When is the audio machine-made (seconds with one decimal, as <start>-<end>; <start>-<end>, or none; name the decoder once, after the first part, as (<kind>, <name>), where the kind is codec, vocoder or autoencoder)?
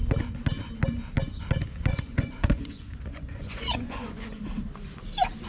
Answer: 1.9-4.4 (vocoder, Vocos)